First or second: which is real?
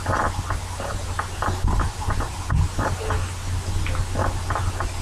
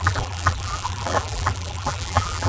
first